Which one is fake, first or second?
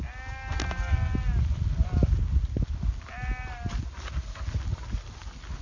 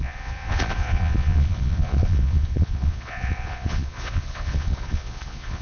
second